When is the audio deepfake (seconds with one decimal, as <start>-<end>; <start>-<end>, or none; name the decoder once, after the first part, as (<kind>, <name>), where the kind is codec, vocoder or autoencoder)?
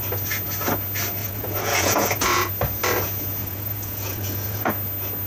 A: 1.2-2.5 (vocoder, Vocos); 3.4-4.7